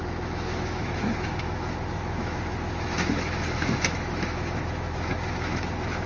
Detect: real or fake fake